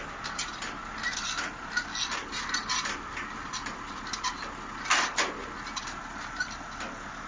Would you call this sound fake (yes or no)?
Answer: no